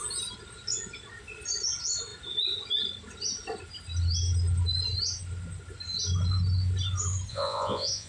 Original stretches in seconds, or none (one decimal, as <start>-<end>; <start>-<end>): 0.0-7.3